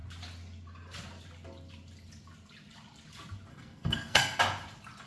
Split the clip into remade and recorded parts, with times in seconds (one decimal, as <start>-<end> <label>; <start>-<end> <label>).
0.0-3.5 recorded; 3.5-4.4 remade; 4.4-5.1 recorded